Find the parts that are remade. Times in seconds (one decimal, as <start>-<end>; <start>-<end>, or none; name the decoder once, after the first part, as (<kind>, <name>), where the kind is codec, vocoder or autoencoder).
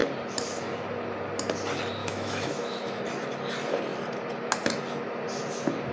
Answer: 2.0-3.0 (autoencoder, DAC-VAE)